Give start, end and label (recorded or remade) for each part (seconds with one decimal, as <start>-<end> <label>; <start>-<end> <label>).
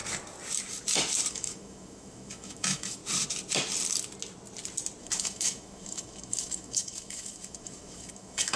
0.0-1.3 recorded; 1.3-3.0 remade; 3.0-5.0 recorded; 5.0-8.6 remade